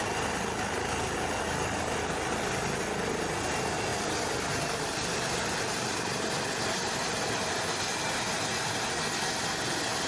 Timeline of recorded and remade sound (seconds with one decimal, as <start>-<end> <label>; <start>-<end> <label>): 0.0-10.1 recorded

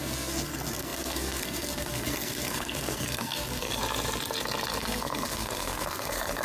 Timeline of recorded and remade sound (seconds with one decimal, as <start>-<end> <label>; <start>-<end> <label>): 0.0-3.8 remade; 3.8-4.8 recorded; 4.8-6.4 remade

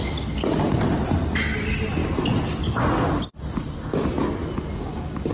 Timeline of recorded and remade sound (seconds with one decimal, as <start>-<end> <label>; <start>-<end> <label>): 0.0-5.3 recorded

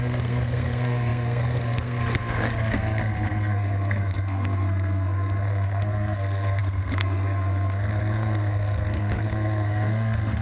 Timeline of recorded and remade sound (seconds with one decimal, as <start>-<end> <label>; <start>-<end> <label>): 0.0-10.4 remade

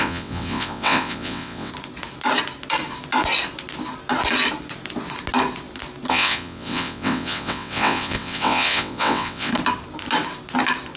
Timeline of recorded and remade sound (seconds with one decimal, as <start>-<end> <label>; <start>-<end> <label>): 0.0-1.7 remade; 1.7-6.1 recorded; 6.1-9.5 remade; 9.5-11.0 recorded

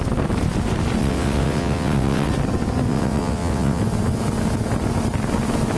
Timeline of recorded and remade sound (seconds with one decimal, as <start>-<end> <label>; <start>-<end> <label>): 0.0-1.0 recorded; 1.0-2.3 remade; 2.3-2.9 recorded; 2.9-3.8 remade; 3.8-5.8 recorded

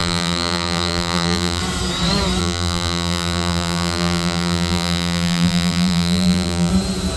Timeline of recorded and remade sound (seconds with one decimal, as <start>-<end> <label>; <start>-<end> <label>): 0.0-1.6 remade; 1.6-2.4 recorded; 2.4-6.7 remade; 6.7-7.2 recorded

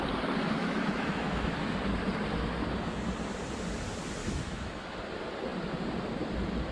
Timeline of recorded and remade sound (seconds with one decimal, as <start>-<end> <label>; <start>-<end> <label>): 0.0-0.6 recorded; 0.6-1.8 remade; 1.8-4.2 recorded; 4.2-5.0 remade; 5.0-6.7 recorded